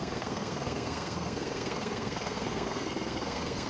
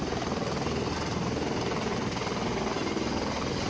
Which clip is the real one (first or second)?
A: second